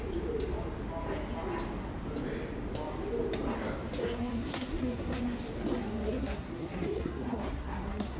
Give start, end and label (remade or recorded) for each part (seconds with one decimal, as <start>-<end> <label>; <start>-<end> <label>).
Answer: 0.0-4.0 recorded; 4.0-5.2 remade; 5.2-5.7 recorded; 5.7-8.2 remade